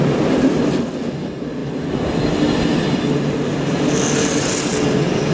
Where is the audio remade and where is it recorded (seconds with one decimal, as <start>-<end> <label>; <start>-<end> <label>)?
0.0-5.3 recorded